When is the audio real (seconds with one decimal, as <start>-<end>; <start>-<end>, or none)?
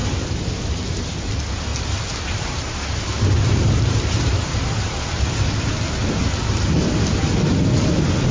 0.5-1.7; 5.2-8.3